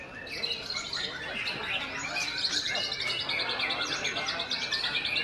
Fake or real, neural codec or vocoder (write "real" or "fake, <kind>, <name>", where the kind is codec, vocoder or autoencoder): real